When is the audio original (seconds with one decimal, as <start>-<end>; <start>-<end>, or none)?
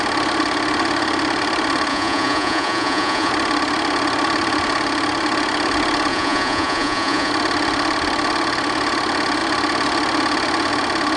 0.0-1.9; 3.3-6.1; 7.3-11.2